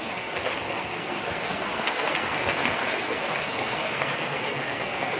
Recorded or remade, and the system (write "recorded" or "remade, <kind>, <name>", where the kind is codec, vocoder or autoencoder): remade, codec, SNAC